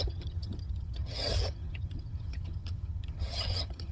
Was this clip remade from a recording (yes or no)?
yes